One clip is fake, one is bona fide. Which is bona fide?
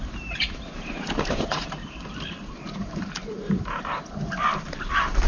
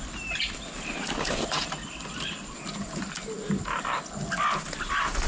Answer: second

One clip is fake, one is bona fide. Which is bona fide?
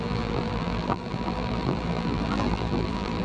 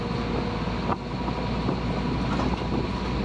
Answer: second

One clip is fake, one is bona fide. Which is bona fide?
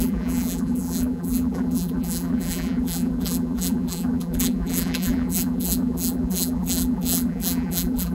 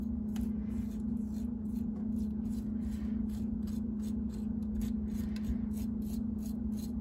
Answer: second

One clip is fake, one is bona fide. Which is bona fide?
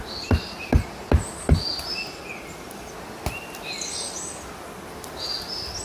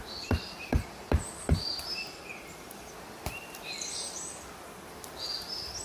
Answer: first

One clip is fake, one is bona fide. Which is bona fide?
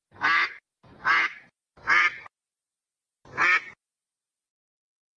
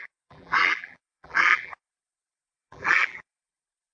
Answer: first